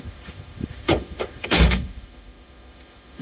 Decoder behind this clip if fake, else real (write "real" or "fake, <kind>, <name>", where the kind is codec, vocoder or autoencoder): fake, autoencoder, DAC-VAE